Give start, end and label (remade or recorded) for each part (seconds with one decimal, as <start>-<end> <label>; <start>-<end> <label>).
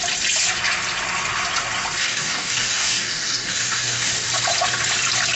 0.0-2.0 recorded; 2.0-4.1 remade; 4.1-5.3 recorded